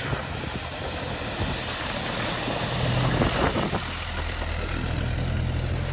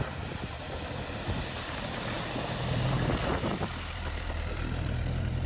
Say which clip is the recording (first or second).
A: first